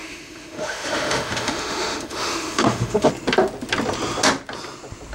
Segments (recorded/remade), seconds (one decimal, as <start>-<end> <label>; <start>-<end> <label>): 0.0-3.1 remade; 3.1-5.1 recorded